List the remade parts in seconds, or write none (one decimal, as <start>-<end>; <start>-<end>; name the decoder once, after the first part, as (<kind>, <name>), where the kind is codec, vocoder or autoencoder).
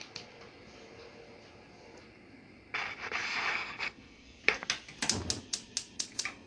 3.5-4.4 (codec, SNAC)